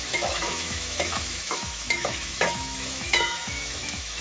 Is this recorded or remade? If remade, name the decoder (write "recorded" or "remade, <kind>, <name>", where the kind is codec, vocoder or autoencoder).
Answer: remade, autoencoder, DAC-VAE